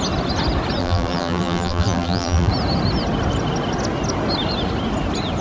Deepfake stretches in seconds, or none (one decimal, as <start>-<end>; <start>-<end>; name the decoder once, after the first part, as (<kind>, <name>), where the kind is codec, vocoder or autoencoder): 0.8-2.5 (vocoder, BigVGAN v2)